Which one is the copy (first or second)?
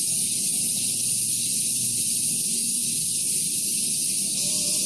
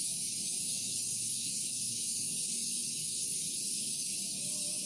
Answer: second